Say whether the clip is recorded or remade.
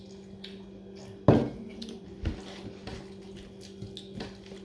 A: recorded